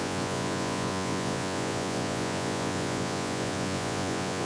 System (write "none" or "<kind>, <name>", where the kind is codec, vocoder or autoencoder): vocoder, Vocos